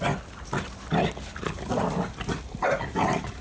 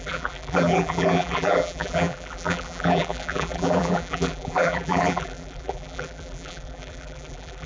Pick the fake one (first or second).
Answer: second